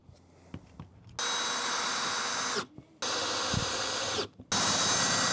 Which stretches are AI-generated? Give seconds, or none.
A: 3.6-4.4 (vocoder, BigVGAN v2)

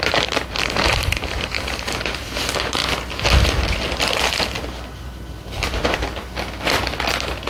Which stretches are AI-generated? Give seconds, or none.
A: 0.0-2.8 (vocoder, BigVGAN v2)

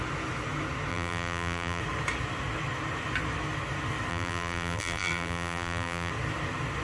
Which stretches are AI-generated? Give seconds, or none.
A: 0.9-1.8 (vocoder, BigVGAN v2); 4.1-6.1

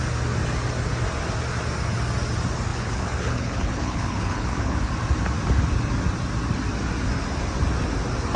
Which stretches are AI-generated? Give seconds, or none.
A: 2.7-4.9 (codec, HILCodec)

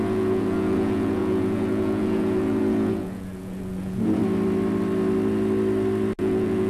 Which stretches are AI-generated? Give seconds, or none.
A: 0.0-4.2 (vocoder, Vocos); 6.2-6.7

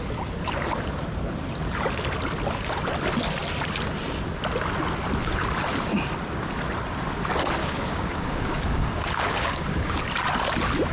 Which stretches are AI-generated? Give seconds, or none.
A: 7.6-10.0 (codec, DAC)